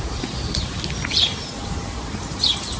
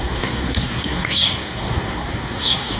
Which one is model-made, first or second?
second